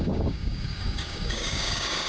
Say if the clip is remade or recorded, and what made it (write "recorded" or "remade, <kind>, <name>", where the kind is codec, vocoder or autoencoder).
remade, codec, DAC